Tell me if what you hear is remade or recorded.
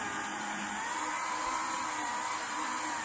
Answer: remade